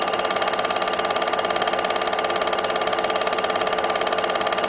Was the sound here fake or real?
real